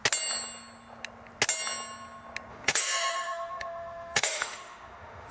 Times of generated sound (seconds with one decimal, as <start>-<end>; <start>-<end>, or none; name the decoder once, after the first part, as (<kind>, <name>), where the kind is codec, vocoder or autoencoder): 2.5-5.3 (autoencoder, DAC-VAE)